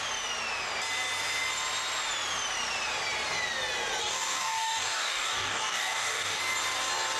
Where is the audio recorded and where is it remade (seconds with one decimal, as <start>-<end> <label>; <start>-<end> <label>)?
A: 0.0-4.0 recorded; 4.0-6.4 remade; 6.4-7.2 recorded